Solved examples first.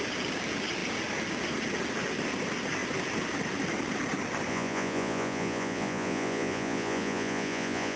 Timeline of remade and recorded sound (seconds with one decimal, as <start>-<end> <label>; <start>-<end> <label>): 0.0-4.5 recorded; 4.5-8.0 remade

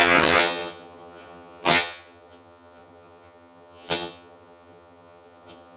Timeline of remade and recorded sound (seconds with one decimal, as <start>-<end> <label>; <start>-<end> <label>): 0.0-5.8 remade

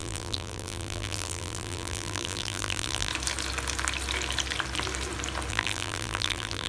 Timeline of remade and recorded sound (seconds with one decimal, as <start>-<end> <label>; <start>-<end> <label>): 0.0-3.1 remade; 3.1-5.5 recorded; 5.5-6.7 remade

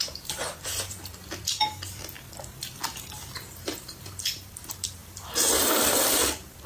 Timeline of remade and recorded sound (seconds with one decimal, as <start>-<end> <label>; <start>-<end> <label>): 0.0-0.5 remade; 0.5-3.2 recorded; 3.2-6.7 remade

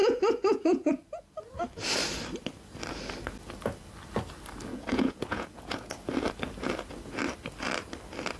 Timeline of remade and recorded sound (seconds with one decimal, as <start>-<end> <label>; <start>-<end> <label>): 0.0-0.9 remade; 0.9-4.7 recorded; 4.7-5.9 remade; 5.9-8.4 recorded

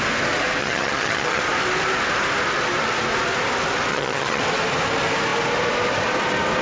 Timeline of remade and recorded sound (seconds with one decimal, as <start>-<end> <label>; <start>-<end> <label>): 0.0-0.6 recorded; 0.6-1.4 remade; 1.4-3.9 recorded; 3.9-4.4 remade; 4.4-6.6 recorded